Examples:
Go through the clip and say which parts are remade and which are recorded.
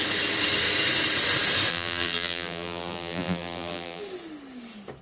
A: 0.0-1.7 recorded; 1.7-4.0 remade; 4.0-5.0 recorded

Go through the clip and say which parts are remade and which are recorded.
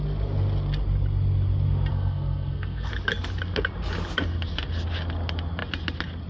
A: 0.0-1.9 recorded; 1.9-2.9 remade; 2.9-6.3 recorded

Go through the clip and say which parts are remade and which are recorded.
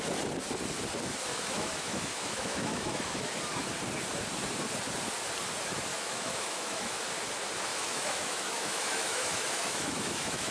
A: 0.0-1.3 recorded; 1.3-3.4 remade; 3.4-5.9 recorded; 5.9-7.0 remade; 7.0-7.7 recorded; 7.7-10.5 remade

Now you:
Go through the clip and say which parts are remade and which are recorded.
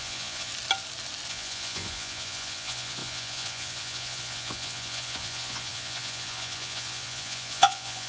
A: 0.0-0.5 remade; 0.5-1.3 recorded; 1.3-8.1 remade